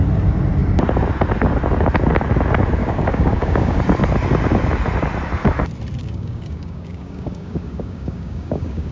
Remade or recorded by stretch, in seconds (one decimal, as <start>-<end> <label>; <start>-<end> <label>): 0.0-2.8 recorded; 2.8-3.8 remade; 3.8-6.0 recorded; 6.0-8.9 remade